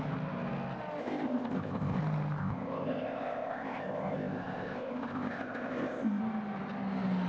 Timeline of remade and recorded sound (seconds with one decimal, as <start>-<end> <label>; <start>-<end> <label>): 0.0-1.0 recorded; 1.0-2.0 remade; 2.0-2.4 recorded; 2.4-6.2 remade; 6.2-7.3 recorded

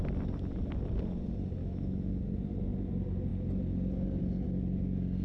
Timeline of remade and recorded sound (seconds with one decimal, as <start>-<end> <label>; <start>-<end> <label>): 0.0-1.6 recorded; 1.6-2.1 remade; 2.1-5.2 recorded

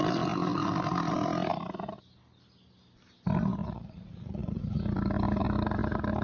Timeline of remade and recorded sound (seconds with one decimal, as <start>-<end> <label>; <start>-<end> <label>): 0.0-3.6 recorded; 3.6-4.6 remade; 4.6-6.2 recorded

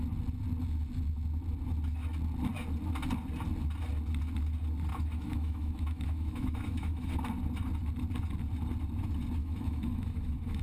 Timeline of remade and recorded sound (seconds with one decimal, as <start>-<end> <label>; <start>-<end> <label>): 0.0-4.9 recorded; 4.9-7.1 remade; 7.1-9.4 recorded; 9.4-10.6 remade

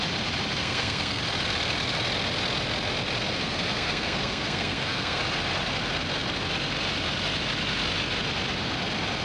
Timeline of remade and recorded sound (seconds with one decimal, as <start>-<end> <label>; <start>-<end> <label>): 0.0-0.6 recorded; 0.6-1.2 remade; 1.2-3.3 recorded; 3.3-5.2 remade; 5.2-9.2 recorded